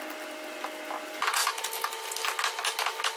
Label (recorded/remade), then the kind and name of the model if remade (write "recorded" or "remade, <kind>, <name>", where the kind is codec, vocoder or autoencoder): recorded